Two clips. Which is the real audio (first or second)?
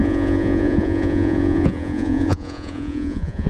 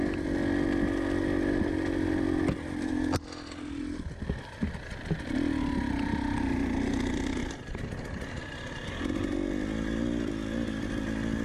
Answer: second